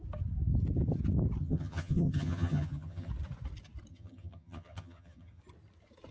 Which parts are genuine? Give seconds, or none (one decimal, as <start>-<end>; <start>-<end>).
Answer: 0.0-1.4; 3.1-3.9; 5.4-6.1